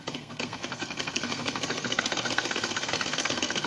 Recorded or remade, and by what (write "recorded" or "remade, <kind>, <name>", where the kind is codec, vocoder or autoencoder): remade, codec, SNAC